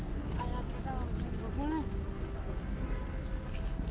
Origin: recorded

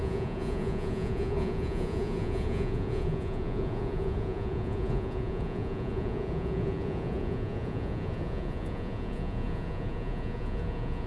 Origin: remade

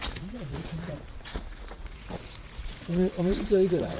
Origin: remade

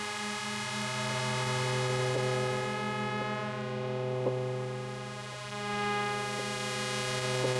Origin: recorded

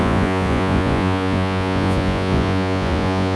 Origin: remade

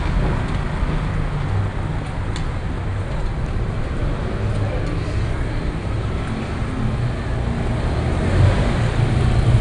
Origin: recorded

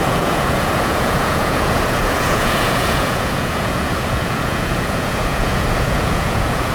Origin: remade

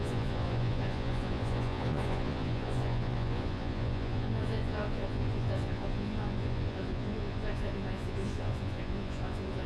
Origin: remade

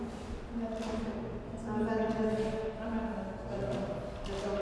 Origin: recorded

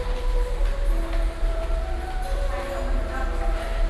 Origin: recorded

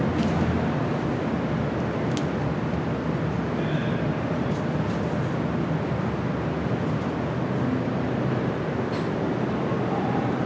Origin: recorded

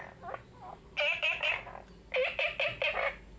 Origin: recorded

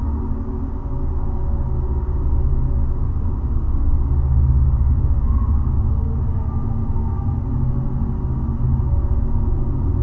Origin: recorded